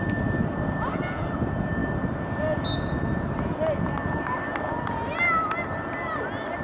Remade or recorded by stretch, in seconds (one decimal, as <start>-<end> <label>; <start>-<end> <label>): 0.0-6.6 recorded